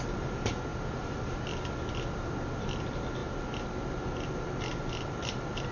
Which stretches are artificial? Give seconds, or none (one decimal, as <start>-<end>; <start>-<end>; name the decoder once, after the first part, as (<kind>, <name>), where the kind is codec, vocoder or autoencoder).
none